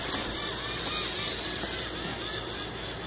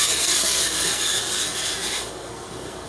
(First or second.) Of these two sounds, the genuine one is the first